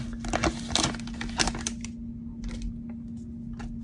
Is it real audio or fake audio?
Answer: real